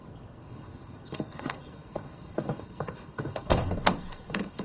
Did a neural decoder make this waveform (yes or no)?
yes